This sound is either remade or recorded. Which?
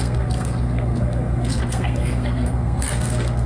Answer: remade